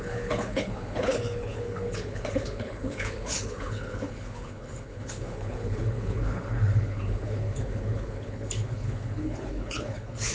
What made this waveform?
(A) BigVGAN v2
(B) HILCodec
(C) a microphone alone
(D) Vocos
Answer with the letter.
B